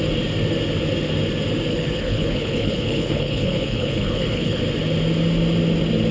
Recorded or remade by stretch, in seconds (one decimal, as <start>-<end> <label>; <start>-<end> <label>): 0.0-1.7 recorded; 1.7-4.6 remade; 4.6-6.1 recorded